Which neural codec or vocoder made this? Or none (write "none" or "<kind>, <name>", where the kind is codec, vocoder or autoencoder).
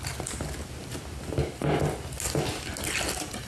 none